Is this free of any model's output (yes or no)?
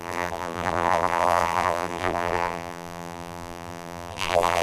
no